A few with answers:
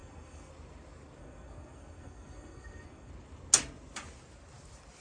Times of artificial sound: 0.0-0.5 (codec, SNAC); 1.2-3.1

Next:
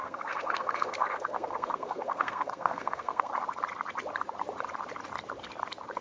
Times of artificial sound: 0.0-3.3 (codec, SNAC)

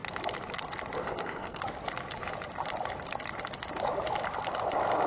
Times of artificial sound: 1.0-1.6 (codec, SNAC)

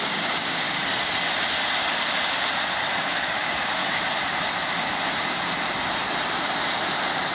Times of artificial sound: 0.0-0.8 (codec, DAC); 3.0-3.8

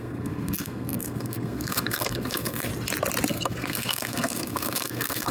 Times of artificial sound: 0.0-2.7 (codec, SNAC); 3.3-5.3

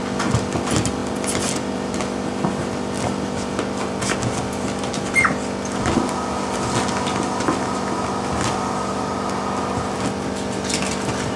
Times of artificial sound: 1.0-2.0 (vocoder, BigVGAN v2)